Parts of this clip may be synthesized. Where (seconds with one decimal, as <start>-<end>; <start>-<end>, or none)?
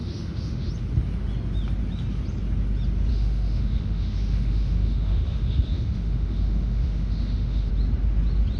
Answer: 0.0-0.7; 3.1-7.7